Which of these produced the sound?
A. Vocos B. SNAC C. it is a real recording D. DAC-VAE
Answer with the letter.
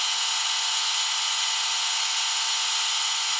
A